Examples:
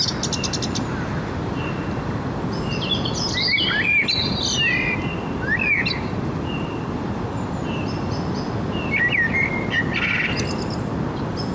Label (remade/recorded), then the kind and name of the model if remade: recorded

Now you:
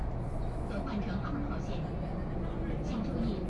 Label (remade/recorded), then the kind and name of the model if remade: recorded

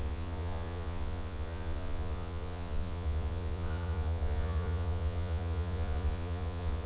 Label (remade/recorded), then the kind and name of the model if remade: remade, vocoder, Vocos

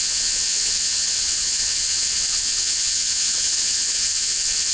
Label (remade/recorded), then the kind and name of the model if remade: remade, vocoder, Vocos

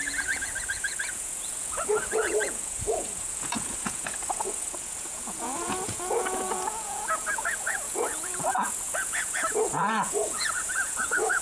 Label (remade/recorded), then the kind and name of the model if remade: remade, vocoder, Vocos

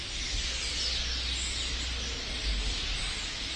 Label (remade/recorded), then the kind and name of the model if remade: recorded